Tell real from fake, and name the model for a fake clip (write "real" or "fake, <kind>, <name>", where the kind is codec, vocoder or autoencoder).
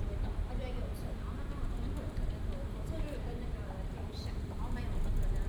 fake, vocoder, BigVGAN v2